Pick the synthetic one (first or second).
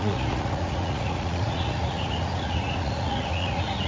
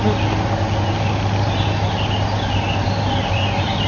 first